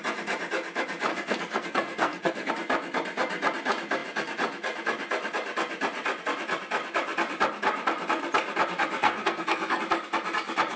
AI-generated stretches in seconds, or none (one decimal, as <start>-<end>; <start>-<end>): 1.1-2.5; 9.0-9.8